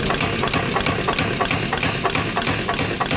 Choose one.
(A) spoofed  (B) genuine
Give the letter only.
B